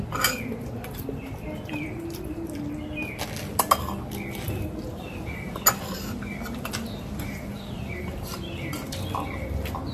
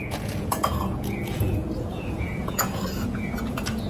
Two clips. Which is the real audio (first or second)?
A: first